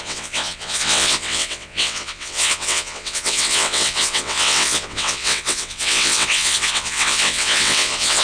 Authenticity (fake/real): fake